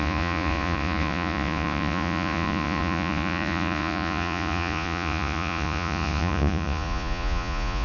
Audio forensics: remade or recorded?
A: remade